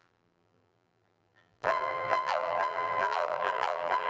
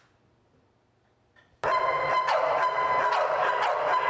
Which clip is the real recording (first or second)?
second